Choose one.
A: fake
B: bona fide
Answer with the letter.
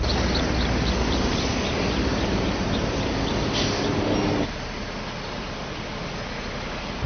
B